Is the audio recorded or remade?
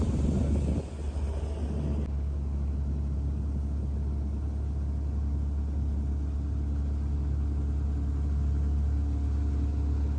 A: recorded